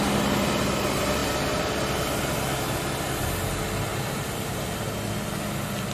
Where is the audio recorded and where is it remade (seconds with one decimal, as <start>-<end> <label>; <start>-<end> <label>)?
0.0-3.9 recorded; 3.9-4.7 remade; 4.7-5.9 recorded